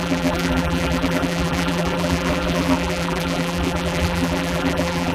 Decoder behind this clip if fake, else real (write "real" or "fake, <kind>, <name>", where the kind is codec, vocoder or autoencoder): fake, vocoder, BigVGAN v2